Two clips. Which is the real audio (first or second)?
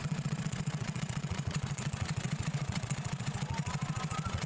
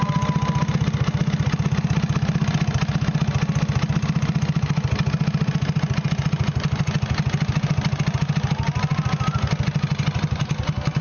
second